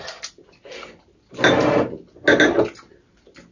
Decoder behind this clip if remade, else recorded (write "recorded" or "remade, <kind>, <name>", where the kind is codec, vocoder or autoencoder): recorded